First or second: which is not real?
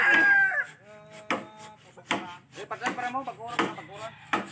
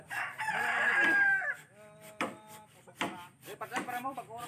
second